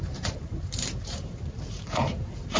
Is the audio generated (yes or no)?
yes